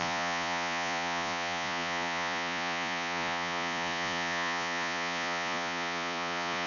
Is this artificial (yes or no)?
yes